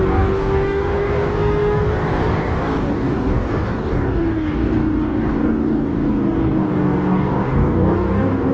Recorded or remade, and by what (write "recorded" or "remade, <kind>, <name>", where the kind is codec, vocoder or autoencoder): remade, codec, DAC